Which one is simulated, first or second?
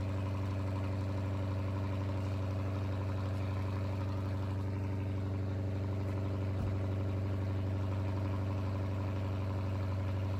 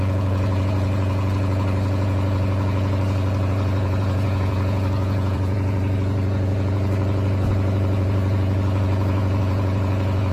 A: second